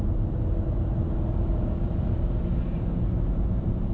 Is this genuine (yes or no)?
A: no